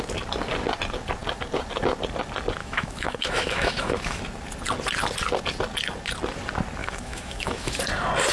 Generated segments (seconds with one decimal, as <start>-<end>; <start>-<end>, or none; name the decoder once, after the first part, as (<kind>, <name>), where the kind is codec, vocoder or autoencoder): 2.6-4.2 (autoencoder, DAC-VAE); 6.8-7.8